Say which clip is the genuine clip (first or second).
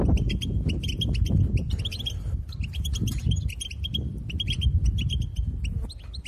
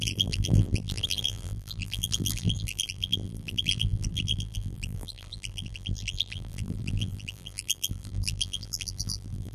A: first